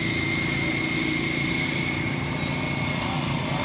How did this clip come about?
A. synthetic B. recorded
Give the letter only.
B